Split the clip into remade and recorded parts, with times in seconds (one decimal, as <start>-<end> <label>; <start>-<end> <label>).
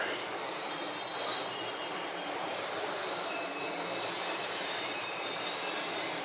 0.0-3.5 remade; 3.5-4.3 recorded; 4.3-6.2 remade